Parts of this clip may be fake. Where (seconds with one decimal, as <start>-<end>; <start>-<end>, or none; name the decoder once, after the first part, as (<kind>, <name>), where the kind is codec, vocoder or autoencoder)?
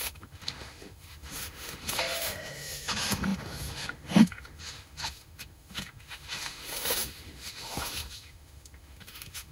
0.0-9.5 (autoencoder, DAC-VAE)